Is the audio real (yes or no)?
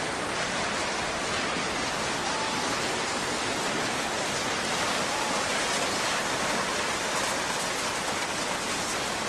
yes